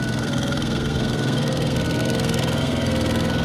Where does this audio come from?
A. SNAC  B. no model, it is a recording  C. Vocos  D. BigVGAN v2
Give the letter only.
A